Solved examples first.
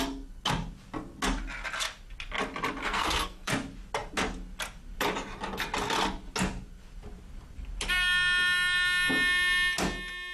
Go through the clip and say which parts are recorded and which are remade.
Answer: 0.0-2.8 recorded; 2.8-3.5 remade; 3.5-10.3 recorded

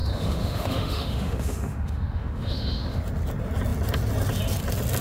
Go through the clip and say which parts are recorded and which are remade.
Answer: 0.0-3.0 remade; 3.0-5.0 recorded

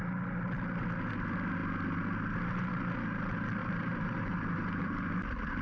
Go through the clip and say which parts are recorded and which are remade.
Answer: 0.0-3.6 recorded; 3.6-5.1 remade; 5.1-5.6 recorded

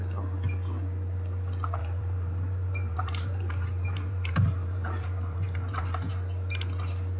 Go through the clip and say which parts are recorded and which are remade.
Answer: 0.0-1.8 recorded; 1.8-6.1 remade; 6.1-7.2 recorded

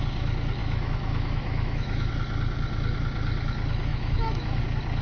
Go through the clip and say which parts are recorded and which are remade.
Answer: 0.0-0.6 recorded; 0.6-2.1 remade; 2.1-3.9 recorded; 3.9-4.6 remade; 4.6-5.0 recorded